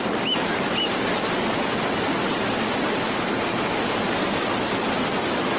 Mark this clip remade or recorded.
recorded